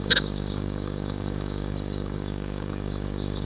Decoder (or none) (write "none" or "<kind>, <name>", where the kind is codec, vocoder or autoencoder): codec, DAC